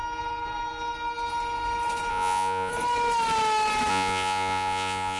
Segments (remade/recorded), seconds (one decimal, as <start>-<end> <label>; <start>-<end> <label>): 0.0-2.1 recorded; 2.1-2.7 remade; 2.7-3.9 recorded; 3.9-5.2 remade